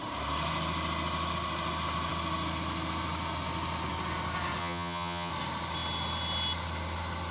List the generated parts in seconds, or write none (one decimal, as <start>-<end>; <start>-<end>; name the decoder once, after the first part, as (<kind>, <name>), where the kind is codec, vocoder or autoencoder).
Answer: 4.6-5.3 (vocoder, HiFi-GAN)